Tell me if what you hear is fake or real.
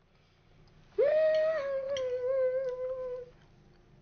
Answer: real